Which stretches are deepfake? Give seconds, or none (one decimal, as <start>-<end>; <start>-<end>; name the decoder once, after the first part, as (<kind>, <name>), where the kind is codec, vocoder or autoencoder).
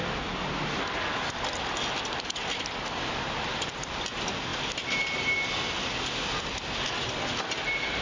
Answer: none